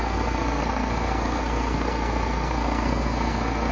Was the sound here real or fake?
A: fake